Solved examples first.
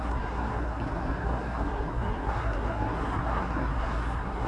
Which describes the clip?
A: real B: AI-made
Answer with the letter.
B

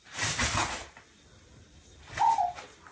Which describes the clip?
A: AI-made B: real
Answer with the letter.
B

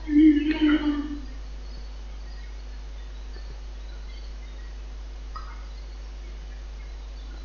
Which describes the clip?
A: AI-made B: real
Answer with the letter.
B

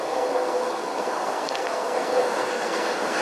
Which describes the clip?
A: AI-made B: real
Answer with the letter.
A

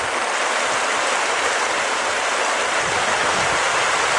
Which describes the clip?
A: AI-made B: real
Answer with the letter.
B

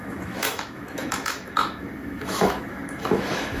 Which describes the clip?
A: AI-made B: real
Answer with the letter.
A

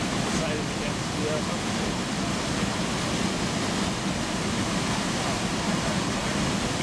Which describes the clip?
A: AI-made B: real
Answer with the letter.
B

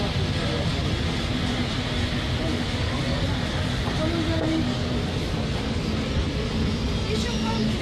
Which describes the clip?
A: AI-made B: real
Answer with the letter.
B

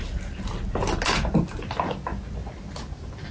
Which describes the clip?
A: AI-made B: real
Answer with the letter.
B